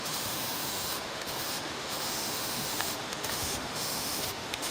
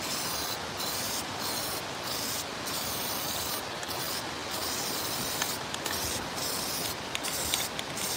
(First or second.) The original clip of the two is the second